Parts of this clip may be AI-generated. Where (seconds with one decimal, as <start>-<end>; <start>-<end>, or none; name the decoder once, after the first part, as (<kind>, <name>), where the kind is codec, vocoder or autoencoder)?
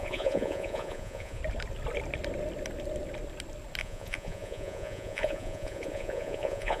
0.0-1.4 (vocoder, Vocos); 3.8-6.8